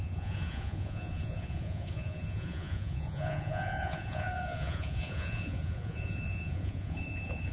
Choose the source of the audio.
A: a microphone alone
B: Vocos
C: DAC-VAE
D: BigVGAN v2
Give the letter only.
B